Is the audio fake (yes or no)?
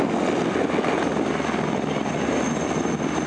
no